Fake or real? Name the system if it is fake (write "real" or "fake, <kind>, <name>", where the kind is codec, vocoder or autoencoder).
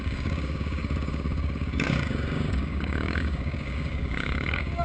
fake, codec, DAC